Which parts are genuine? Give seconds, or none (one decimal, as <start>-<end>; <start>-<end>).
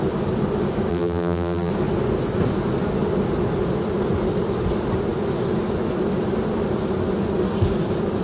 0.0-0.9; 1.7-8.2